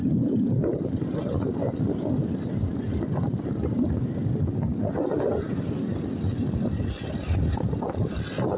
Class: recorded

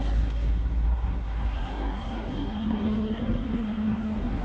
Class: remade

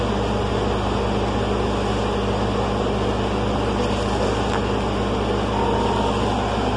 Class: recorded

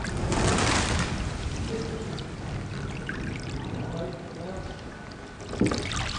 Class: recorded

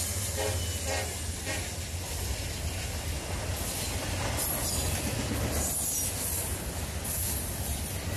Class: recorded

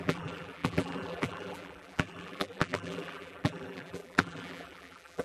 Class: remade